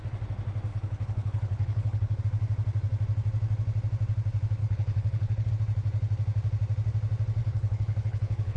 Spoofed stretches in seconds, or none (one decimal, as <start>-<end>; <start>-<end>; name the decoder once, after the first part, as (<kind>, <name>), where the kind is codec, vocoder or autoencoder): 0.7-2.2 (codec, HILCodec); 4.6-5.5; 7.4-8.6